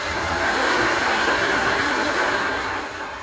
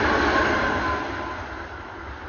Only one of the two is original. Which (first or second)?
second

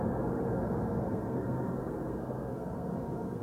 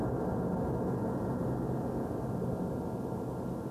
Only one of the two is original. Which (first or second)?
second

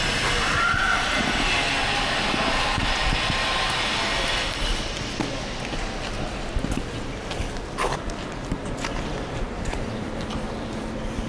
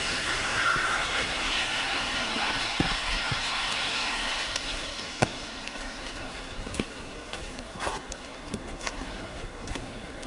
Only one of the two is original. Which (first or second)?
first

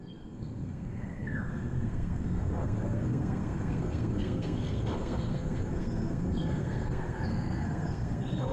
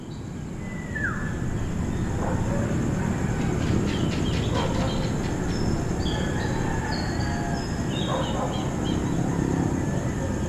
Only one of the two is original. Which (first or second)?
second